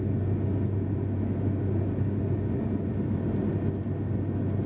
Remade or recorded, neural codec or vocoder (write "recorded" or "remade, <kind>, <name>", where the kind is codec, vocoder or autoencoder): recorded